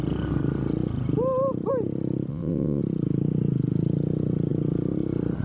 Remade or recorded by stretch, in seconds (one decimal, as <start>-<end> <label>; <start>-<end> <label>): 0.0-2.3 recorded; 2.3-2.8 remade; 2.8-5.4 recorded